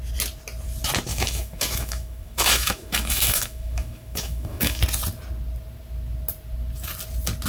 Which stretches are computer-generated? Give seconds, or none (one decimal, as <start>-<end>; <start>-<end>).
1.1-4.8